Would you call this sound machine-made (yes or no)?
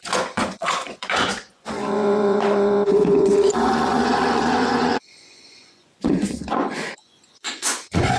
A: yes